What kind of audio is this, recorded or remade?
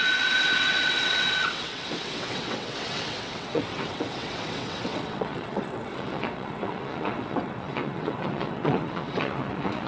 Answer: remade